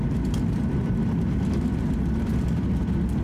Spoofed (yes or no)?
no